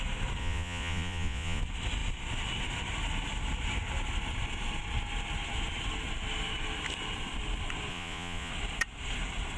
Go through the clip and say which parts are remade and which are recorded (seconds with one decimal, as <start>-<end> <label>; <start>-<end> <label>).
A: 0.0-0.4 recorded; 0.4-1.6 remade; 1.6-7.9 recorded; 7.9-8.5 remade; 8.5-9.6 recorded